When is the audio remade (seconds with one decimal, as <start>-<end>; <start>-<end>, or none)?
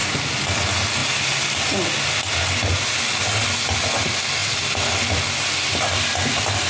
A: none